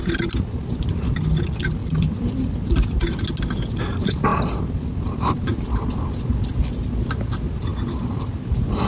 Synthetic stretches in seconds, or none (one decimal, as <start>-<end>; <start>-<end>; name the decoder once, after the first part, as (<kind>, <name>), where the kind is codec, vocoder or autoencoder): 1.8-3.2 (vocoder, BigVGAN v2)